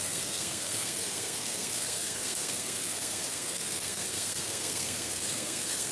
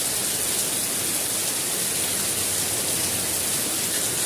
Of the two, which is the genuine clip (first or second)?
second